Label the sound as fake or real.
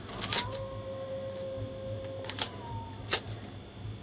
real